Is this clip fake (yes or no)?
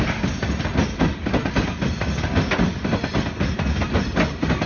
no